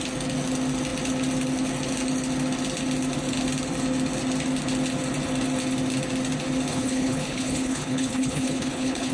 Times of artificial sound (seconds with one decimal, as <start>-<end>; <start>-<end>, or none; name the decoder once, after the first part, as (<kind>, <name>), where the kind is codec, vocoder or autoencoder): 6.7-9.1 (codec, HILCodec)